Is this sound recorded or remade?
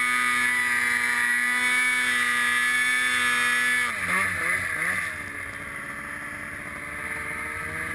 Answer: recorded